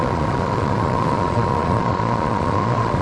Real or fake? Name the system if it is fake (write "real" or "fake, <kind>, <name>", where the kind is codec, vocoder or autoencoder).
fake, vocoder, Vocos